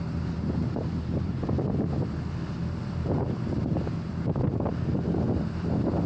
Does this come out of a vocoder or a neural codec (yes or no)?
no